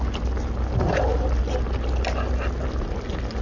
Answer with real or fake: real